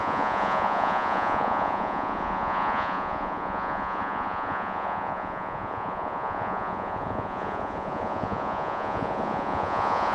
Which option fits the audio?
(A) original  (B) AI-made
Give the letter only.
B